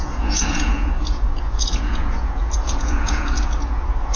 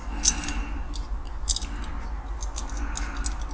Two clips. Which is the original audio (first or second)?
second